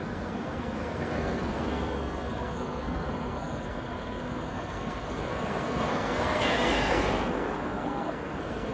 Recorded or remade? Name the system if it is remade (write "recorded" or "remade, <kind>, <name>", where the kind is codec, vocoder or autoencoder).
remade, codec, SNAC